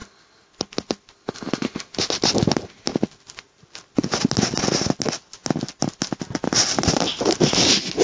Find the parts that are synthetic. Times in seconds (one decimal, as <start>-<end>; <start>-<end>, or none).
none